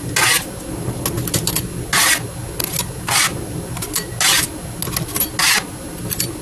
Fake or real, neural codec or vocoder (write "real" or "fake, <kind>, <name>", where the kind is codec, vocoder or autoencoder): real